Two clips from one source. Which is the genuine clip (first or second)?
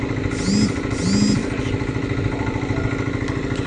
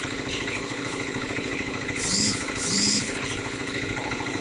first